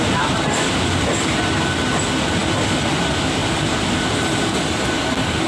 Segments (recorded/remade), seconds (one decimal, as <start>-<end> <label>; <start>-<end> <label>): 0.0-3.4 recorded; 3.4-4.4 remade; 4.4-5.5 recorded